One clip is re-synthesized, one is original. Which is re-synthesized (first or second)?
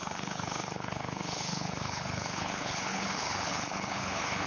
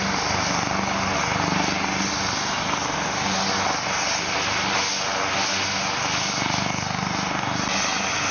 first